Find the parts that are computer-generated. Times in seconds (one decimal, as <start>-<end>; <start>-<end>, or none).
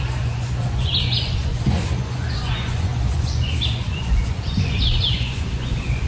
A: 0.0-6.1